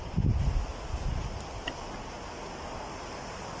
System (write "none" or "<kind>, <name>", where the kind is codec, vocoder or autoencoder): none